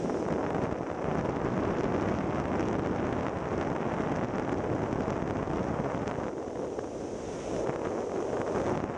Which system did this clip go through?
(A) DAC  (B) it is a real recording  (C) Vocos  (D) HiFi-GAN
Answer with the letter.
B